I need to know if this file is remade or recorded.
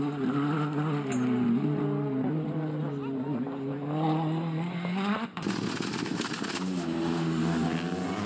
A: recorded